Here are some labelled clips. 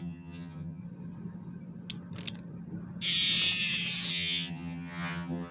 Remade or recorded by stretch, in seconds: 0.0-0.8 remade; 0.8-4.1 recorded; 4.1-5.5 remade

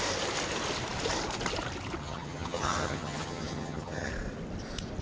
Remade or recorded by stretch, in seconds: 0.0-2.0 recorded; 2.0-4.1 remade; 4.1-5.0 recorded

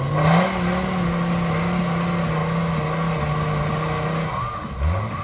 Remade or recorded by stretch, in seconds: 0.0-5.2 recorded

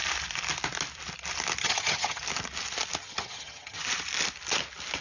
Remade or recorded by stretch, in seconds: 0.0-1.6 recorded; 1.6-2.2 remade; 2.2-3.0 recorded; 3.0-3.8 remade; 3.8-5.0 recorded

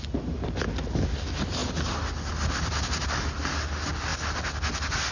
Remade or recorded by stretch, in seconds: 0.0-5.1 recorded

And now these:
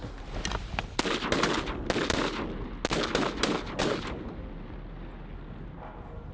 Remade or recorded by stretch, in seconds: 0.0-6.3 recorded